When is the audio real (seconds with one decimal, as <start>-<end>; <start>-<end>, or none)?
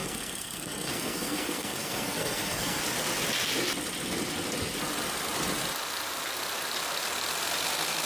2.8-8.1